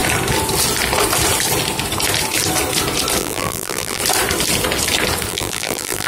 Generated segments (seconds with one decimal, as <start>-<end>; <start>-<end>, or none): 3.2-4.0; 5.3-6.1